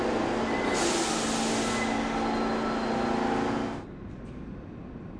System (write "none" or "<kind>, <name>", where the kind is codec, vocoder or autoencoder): none